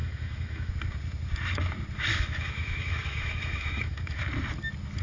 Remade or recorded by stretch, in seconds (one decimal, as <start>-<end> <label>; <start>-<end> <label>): 0.0-0.7 remade; 0.7-2.1 recorded; 2.1-4.2 remade; 4.2-5.0 recorded

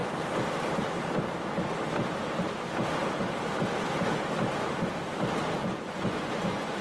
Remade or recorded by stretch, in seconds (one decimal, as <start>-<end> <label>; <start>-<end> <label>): 0.0-5.6 recorded; 5.6-6.8 remade